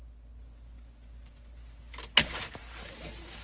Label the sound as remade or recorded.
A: recorded